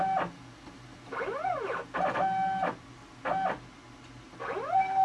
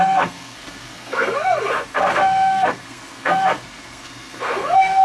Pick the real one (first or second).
first